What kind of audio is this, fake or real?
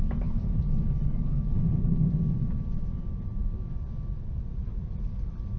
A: real